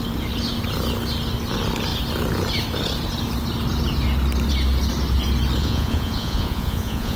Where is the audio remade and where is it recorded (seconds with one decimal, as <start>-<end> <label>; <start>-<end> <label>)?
0.0-5.6 recorded; 5.6-7.2 remade